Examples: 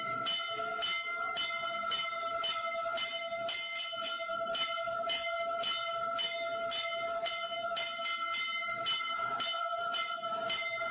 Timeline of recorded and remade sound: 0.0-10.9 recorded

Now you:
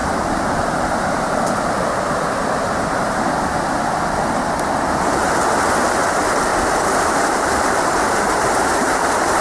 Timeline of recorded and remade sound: 0.0-2.0 remade; 2.0-6.5 recorded; 6.5-9.4 remade

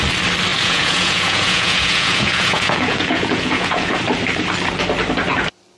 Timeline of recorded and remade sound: 0.0-0.5 recorded; 0.5-4.0 remade; 4.0-5.8 recorded

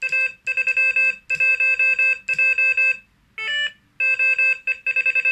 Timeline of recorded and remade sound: 0.0-5.3 recorded

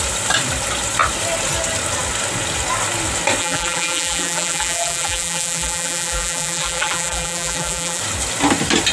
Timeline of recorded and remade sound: 0.0-3.4 recorded; 3.4-8.0 remade; 8.0-8.9 recorded

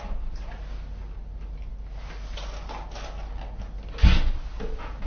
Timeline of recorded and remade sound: 0.0-5.1 recorded